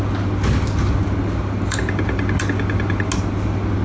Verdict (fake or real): real